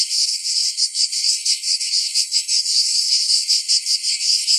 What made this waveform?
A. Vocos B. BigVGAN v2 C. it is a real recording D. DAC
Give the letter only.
D